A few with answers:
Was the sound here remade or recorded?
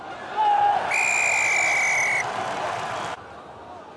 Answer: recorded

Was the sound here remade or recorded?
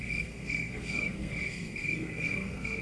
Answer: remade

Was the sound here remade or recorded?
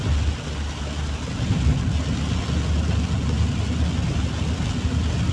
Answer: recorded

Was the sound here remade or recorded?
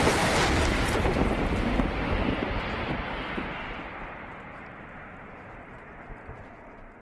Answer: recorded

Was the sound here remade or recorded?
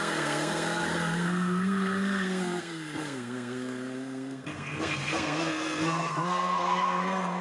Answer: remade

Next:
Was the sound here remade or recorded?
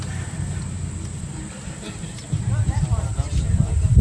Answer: recorded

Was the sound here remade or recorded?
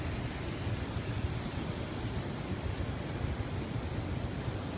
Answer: recorded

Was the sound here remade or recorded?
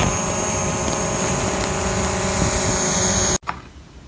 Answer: recorded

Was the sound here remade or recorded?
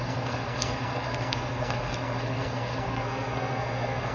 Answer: remade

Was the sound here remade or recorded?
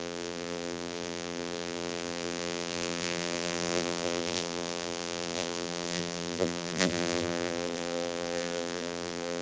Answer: remade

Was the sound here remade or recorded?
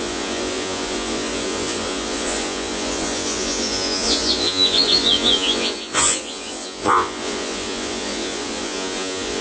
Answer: remade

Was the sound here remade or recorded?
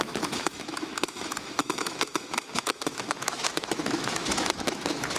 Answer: remade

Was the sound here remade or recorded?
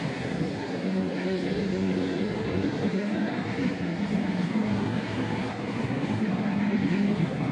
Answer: remade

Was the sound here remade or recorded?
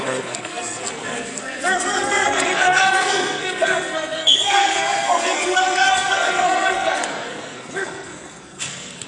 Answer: remade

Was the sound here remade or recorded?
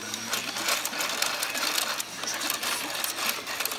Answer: recorded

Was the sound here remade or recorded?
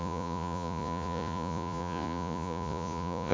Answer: remade